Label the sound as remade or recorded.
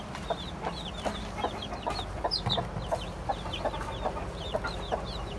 recorded